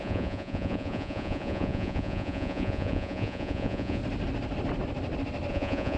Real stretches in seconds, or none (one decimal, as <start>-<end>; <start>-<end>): 4.0-5.5